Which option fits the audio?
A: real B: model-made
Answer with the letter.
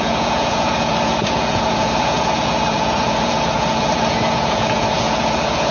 B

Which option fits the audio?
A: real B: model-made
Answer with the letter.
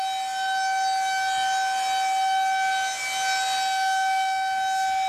A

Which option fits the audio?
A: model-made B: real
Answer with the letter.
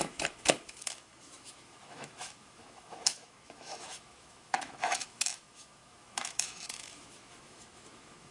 A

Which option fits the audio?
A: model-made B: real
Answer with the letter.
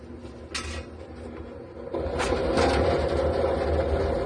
B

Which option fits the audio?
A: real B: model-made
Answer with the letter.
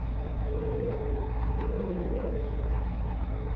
B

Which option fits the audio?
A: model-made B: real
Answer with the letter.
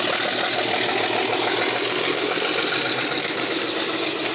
B